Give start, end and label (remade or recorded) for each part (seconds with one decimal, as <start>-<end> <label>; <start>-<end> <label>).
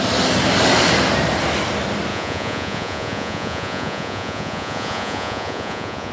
0.0-2.1 recorded; 2.1-6.1 remade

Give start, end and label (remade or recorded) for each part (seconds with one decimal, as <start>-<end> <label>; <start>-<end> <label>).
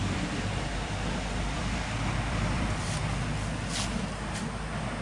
0.0-3.0 remade; 3.0-5.0 recorded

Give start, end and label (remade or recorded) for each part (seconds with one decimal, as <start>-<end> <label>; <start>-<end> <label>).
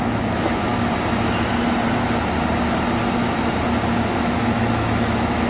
0.0-0.7 remade; 0.7-4.0 recorded; 4.0-5.5 remade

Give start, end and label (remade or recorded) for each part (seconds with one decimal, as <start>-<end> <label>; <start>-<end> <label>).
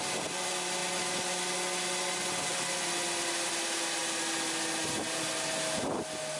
0.0-6.4 recorded